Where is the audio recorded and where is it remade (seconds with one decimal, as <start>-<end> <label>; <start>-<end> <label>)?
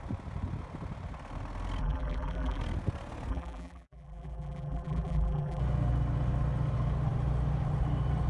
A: 0.0-1.8 recorded; 1.8-2.6 remade; 2.6-3.3 recorded; 3.3-5.6 remade; 5.6-8.3 recorded